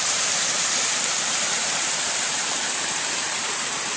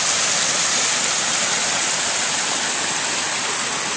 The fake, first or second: first